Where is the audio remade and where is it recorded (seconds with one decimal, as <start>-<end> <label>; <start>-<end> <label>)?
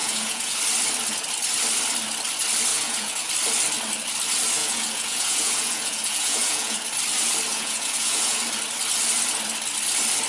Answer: 0.0-0.6 remade; 0.6-2.7 recorded; 2.7-3.3 remade; 3.3-4.6 recorded; 4.6-6.8 remade; 6.8-7.5 recorded; 7.5-8.4 remade; 8.4-10.3 recorded